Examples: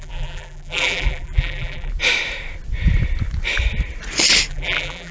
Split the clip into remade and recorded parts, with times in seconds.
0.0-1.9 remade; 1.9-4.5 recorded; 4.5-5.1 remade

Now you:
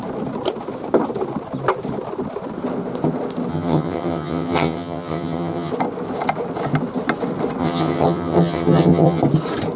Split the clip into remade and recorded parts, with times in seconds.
0.0-3.5 recorded; 3.5-5.7 remade; 5.7-7.6 recorded; 7.6-9.2 remade; 9.2-9.8 recorded

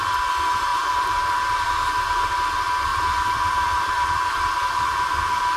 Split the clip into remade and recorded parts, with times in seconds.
0.0-0.7 recorded; 0.7-2.3 remade; 2.3-2.9 recorded; 2.9-4.7 remade; 4.7-5.6 recorded

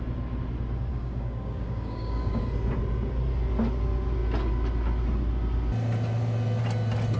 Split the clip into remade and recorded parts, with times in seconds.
0.0-0.9 recorded; 0.9-2.4 remade; 2.4-7.2 recorded

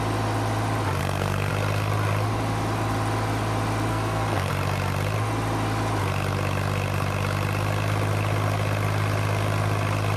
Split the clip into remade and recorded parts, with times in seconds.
0.0-1.0 recorded; 1.0-1.5 remade; 1.5-3.9 recorded; 3.9-4.5 remade; 4.5-10.2 recorded

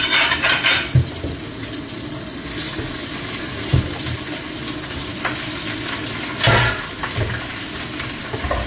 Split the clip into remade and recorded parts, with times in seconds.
0.0-8.7 recorded

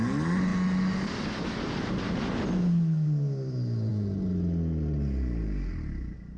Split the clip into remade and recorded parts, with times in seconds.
0.0-6.4 recorded

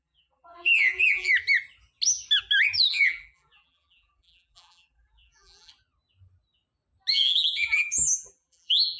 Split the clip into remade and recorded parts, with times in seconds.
0.0-1.3 remade; 1.3-2.9 recorded; 2.9-5.7 remade; 5.7-7.1 recorded; 7.1-9.0 remade